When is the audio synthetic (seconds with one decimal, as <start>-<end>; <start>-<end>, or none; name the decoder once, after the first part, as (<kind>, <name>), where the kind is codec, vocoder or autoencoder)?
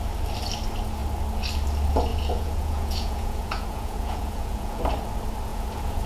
2.1-4.8 (vocoder, Vocos); 5.5-6.1